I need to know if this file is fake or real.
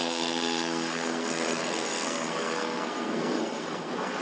fake